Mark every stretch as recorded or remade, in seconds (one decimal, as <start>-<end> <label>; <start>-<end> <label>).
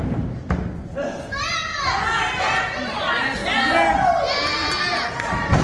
0.0-1.7 remade; 1.7-2.4 recorded; 2.4-3.4 remade; 3.4-5.6 recorded